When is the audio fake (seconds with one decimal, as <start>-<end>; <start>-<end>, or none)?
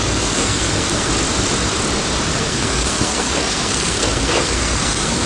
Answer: 0.0-1.1; 2.3-5.3